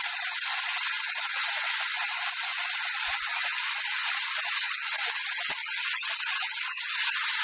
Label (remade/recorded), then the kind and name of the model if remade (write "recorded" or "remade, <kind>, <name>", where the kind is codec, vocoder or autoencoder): recorded